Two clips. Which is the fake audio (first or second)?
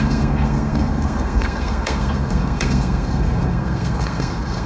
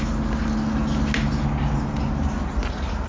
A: first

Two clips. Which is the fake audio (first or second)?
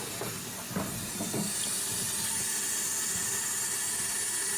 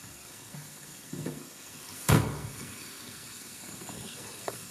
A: second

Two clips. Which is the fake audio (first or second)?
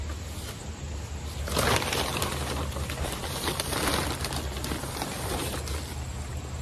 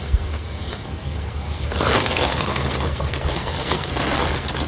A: second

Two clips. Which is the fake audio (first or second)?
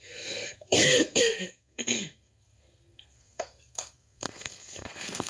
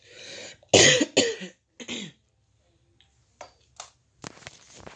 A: first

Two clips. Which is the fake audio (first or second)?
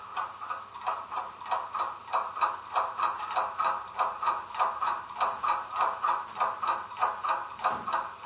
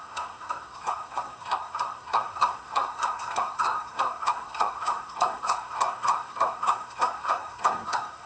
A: second